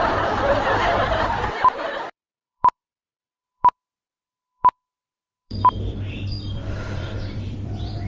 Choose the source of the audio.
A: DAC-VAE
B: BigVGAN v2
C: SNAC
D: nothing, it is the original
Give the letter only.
B